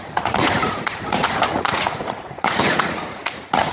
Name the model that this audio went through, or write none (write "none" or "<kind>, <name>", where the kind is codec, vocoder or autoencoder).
vocoder, Vocos